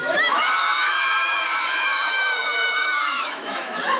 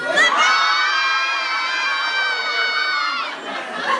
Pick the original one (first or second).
second